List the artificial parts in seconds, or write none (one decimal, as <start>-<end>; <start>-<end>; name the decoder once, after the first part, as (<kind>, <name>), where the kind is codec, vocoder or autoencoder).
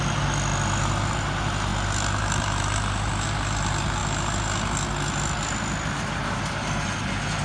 0.0-0.5 (vocoder, BigVGAN v2); 1.1-1.7; 2.2-4.0; 6.4-7.4